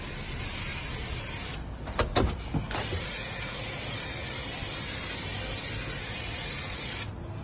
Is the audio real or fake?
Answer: real